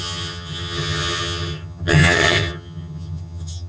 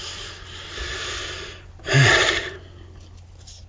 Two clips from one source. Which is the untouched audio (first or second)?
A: second